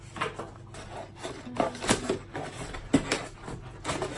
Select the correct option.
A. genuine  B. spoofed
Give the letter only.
A